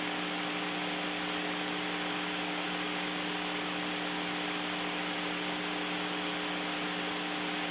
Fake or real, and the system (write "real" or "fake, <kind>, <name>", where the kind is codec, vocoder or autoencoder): real